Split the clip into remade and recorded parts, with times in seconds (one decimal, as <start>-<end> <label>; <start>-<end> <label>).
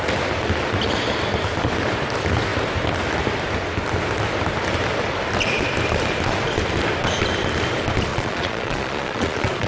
0.0-8.1 recorded; 8.1-9.7 remade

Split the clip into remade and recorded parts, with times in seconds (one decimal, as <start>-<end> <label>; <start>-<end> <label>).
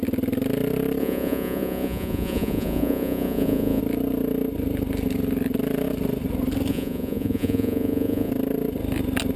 0.0-1.0 recorded; 1.0-3.8 remade; 3.8-6.7 recorded; 6.7-8.3 remade; 8.3-9.4 recorded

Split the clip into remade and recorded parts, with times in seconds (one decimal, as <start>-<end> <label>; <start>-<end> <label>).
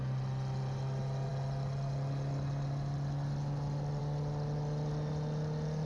0.0-5.9 recorded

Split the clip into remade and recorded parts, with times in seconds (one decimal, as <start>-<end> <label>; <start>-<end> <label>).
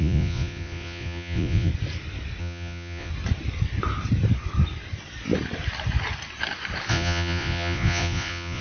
0.0-1.7 remade; 1.7-2.4 recorded; 2.4-3.1 remade; 3.1-6.9 recorded; 6.9-8.6 remade